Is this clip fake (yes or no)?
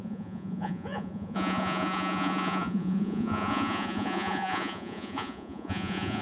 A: yes